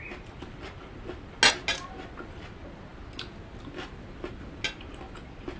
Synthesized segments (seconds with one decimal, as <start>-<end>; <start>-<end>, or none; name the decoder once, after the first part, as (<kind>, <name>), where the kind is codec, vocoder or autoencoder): none